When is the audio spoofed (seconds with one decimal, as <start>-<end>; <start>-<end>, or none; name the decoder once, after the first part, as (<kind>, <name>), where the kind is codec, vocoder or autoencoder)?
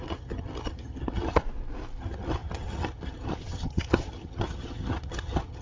0.0-1.4 (vocoder, HiFi-GAN); 2.0-5.6